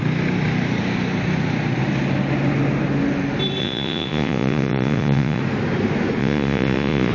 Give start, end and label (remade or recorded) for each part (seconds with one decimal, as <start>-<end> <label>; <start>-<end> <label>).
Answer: 0.0-3.6 recorded; 3.6-5.4 remade; 5.4-6.2 recorded; 6.2-7.1 remade

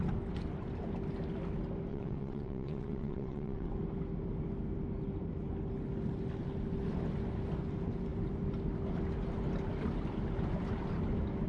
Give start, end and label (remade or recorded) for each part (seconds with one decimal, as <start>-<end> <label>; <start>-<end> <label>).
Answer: 0.0-1.9 recorded; 1.9-3.7 remade; 3.7-11.5 recorded